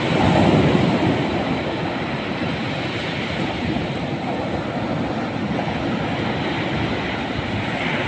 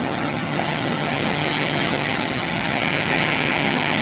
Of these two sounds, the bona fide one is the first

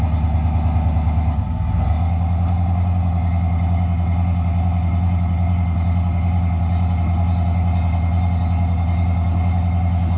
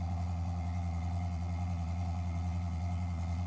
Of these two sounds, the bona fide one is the first